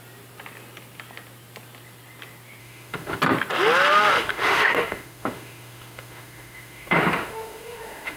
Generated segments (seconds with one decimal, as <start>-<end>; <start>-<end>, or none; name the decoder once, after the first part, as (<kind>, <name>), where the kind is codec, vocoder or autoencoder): 2.6-3.2 (autoencoder, DAC-VAE); 4.1-8.2